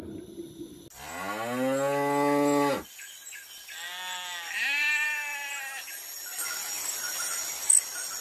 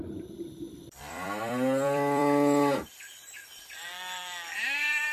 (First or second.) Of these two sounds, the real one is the first